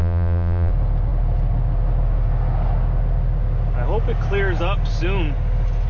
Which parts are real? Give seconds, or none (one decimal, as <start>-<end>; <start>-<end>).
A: 0.7-5.9